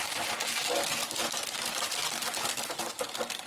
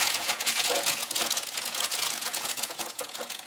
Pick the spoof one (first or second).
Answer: second